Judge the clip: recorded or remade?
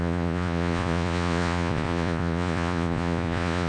remade